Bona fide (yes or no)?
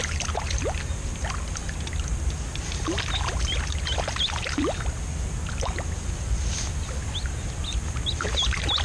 yes